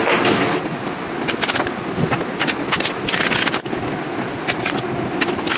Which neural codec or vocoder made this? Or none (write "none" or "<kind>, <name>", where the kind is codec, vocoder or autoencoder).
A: none